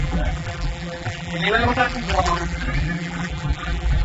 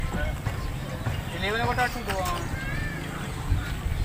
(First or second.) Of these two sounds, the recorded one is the second